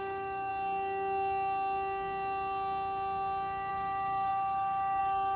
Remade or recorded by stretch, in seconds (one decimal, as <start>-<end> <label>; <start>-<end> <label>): 0.0-0.5 remade; 0.5-3.7 recorded; 3.7-5.4 remade